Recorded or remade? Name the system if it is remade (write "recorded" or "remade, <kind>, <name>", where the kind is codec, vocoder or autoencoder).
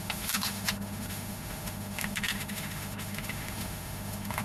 remade, autoencoder, DAC-VAE